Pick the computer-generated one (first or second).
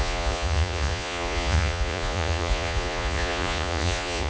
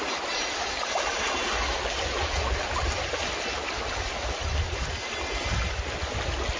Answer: first